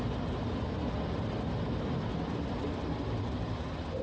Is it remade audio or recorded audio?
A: recorded